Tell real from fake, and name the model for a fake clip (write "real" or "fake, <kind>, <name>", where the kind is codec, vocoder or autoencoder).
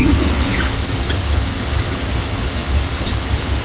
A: fake, vocoder, HiFi-GAN